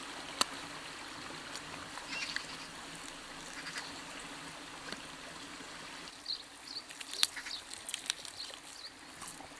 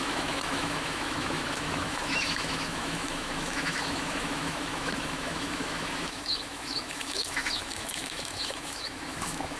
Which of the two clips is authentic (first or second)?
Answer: first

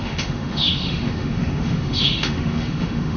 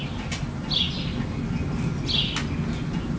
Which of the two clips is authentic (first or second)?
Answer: second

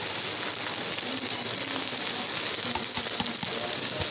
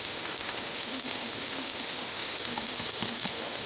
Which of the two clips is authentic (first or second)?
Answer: first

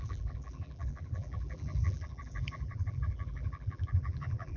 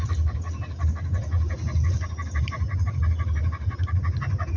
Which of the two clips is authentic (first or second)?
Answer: second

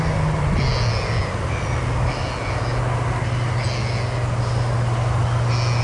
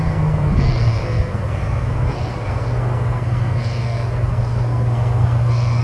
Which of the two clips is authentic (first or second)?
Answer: first